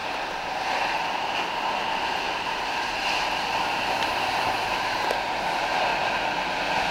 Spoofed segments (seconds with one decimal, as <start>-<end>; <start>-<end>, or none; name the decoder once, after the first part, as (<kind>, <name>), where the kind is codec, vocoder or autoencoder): none